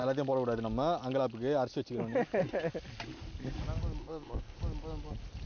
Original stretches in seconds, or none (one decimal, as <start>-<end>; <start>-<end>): 0.0-4.0; 4.6-5.5

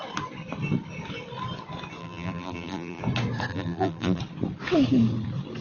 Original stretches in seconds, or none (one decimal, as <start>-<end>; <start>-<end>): 0.0-2.0; 3.0-3.5; 4.2-5.6

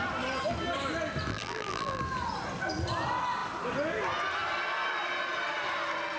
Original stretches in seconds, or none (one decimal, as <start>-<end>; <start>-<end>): 0.0-1.3; 2.0-6.2

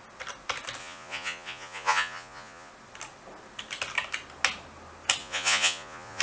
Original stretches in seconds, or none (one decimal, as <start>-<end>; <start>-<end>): 0.0-0.8; 2.7-5.2

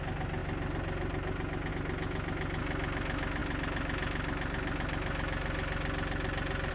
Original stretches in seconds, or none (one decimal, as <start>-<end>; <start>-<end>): 0.0-6.7

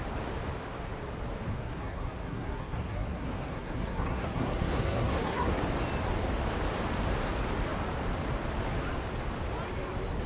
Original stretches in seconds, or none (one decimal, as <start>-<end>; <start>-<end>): 0.0-1.5; 5.5-10.3

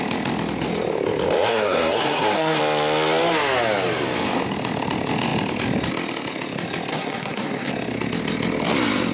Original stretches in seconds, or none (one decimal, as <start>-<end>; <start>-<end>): 0.0-1.5; 2.6-6.9; 7.7-9.1

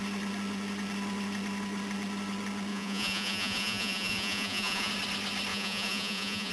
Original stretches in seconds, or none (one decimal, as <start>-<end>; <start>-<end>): 0.0-2.7; 4.9-5.5